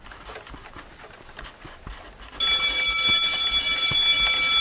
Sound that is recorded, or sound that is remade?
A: recorded